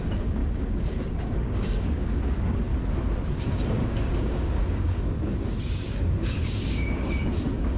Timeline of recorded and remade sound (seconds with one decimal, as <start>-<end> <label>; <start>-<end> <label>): 0.0-2.7 remade; 2.7-3.3 recorded; 3.3-7.8 remade